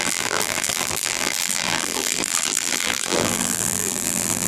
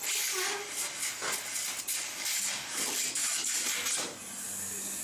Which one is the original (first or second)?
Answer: second